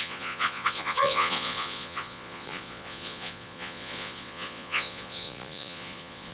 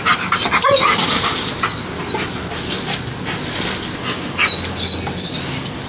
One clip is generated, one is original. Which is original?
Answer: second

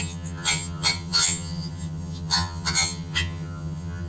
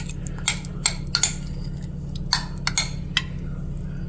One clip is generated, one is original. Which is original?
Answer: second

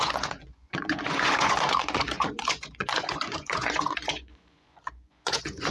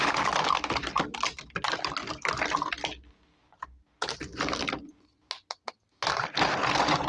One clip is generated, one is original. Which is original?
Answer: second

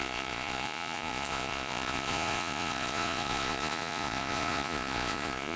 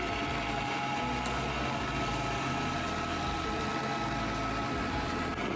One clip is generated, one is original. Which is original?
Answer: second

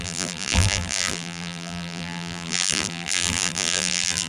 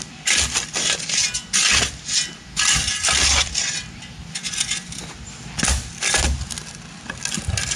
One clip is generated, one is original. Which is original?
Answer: second